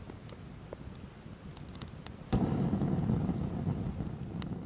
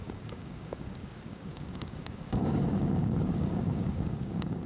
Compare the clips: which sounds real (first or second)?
first